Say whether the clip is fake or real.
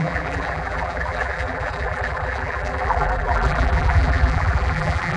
fake